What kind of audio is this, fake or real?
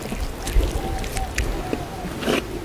real